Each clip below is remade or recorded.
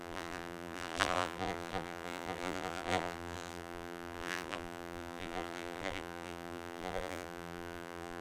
remade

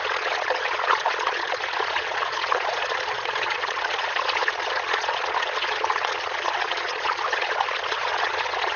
remade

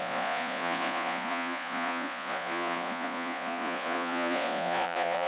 remade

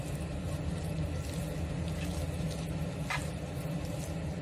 recorded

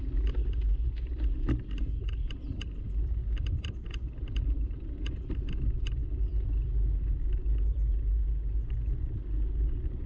recorded